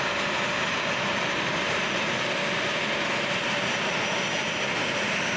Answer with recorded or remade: recorded